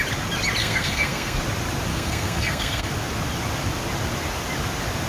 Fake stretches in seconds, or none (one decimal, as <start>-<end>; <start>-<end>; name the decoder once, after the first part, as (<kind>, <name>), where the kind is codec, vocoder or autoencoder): 0.6-1.4 (codec, SNAC); 1.9-2.9